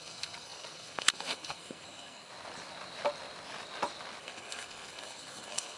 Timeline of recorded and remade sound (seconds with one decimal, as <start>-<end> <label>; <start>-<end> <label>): 0.0-2.3 remade; 2.3-4.2 recorded; 4.2-5.8 remade